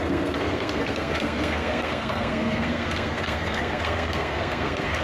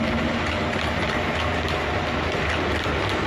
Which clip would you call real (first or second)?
second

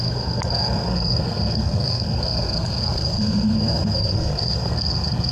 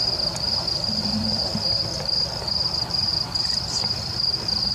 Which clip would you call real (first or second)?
second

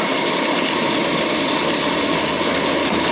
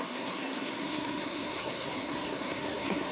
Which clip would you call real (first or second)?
first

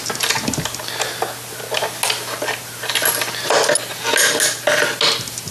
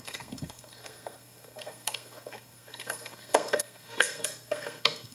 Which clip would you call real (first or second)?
first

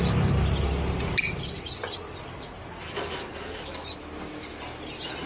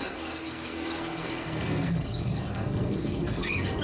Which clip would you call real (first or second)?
first